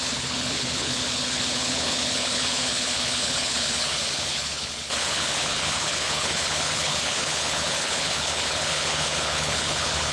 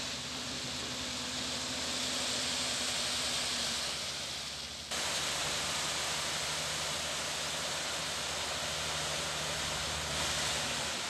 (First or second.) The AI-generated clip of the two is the first